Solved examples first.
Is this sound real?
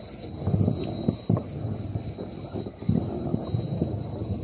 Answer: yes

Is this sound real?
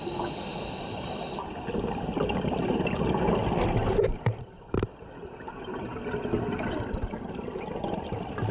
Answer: yes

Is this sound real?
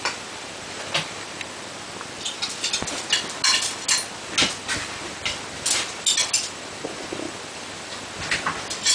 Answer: yes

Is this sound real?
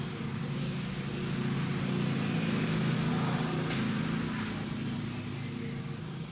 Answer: yes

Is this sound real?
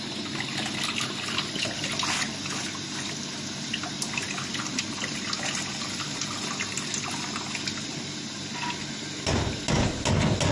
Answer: yes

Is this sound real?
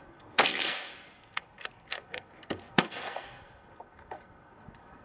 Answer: no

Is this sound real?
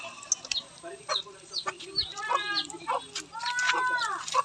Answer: yes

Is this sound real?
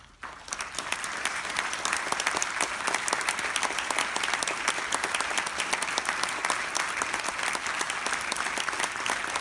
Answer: yes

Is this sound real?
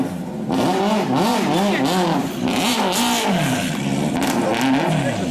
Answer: yes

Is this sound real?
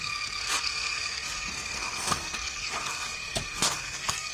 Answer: no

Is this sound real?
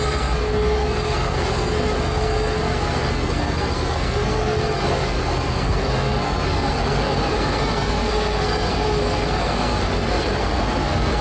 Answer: no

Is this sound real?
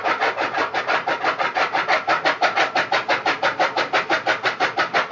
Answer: yes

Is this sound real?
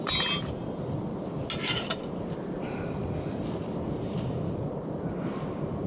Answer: yes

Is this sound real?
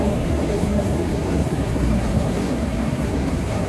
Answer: no